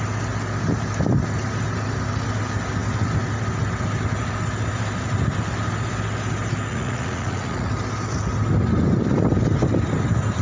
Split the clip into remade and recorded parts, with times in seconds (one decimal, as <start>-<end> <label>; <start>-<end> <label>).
0.0-6.7 recorded; 6.7-7.7 remade; 7.7-10.4 recorded